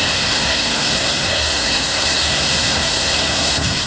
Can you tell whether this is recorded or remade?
remade